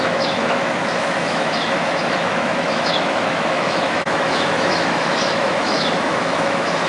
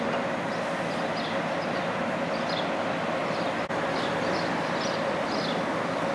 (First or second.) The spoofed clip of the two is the first